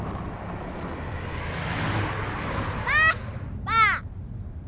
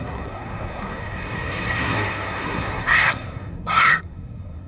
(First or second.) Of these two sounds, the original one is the first